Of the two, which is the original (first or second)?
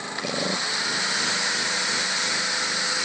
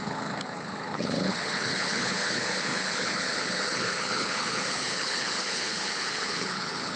first